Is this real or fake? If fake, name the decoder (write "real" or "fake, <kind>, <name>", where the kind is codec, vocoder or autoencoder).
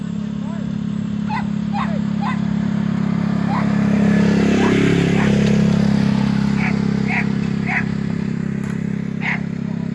real